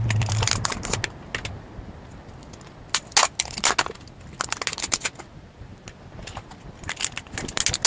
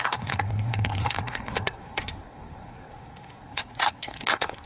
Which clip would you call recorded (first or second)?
first